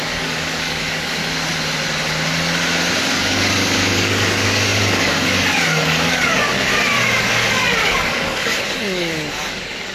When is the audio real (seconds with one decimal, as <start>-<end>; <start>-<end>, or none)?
1.2-3.0; 6.7-7.2

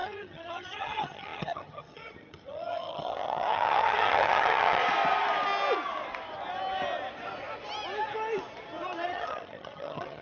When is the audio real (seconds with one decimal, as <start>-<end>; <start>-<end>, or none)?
4.8-9.1

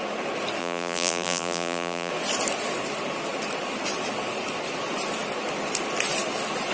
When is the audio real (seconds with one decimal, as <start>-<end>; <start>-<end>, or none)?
0.0-0.6; 2.1-6.7

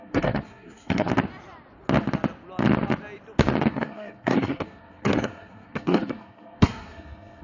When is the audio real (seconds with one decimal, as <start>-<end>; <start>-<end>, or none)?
1.1-3.7

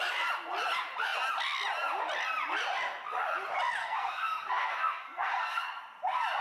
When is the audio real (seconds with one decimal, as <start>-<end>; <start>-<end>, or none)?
0.0-3.8; 5.7-6.4

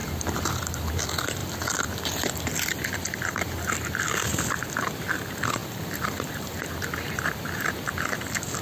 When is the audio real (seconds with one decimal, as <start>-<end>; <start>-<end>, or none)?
0.9-1.4; 3.7-5.6; 6.6-8.6

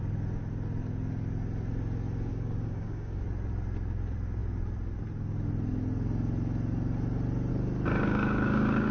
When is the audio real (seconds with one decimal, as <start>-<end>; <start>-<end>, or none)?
0.0-2.3; 3.2-7.9